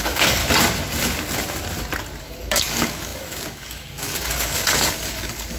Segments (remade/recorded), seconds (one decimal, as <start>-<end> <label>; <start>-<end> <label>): 0.0-0.4 remade; 0.4-2.2 recorded; 2.2-5.6 remade